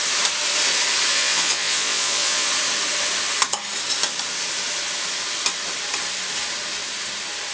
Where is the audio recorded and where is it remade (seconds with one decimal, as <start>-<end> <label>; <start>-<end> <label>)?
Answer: 0.0-1.1 recorded; 1.1-2.5 remade; 2.5-7.5 recorded